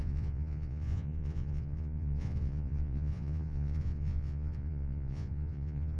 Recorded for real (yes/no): no